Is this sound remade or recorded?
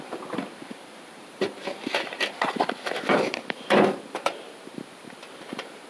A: remade